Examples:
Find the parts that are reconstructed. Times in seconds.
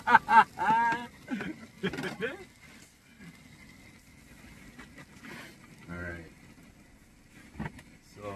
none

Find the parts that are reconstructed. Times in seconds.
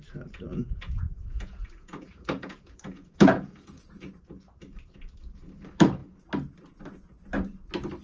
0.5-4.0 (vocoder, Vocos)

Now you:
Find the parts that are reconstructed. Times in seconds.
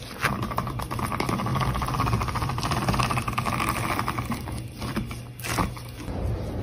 none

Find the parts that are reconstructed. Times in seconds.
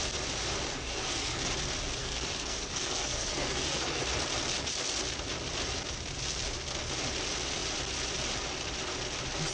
0.7-1.5 (codec, SNAC); 2.0-4.0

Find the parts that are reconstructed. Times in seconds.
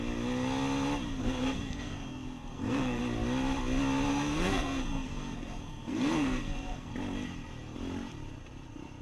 1.2-3.0 (codec, SNAC); 4.1-6.9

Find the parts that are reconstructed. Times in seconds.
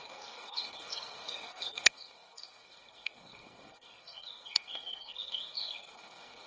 0.0-6.5 (codec, SNAC)